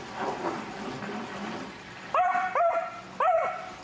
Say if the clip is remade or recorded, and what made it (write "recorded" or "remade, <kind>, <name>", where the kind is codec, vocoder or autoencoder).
recorded